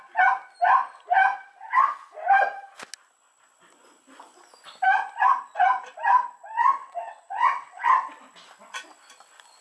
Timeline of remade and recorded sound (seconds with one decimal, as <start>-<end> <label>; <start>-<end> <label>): 0.0-6.8 recorded; 6.8-8.1 remade; 8.1-9.6 recorded